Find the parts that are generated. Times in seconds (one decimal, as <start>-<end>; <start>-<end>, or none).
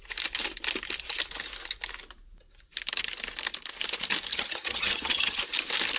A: 4.3-5.4